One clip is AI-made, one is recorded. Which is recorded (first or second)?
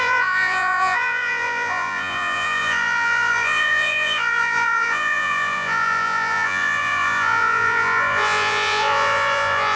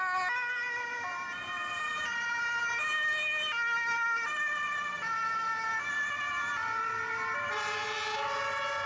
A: second